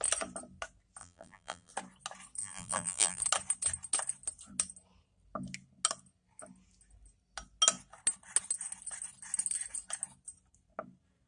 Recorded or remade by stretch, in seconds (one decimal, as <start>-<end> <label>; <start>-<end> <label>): 0.0-1.0 recorded; 1.0-1.7 remade; 1.7-2.4 recorded; 2.4-3.2 remade; 3.2-11.3 recorded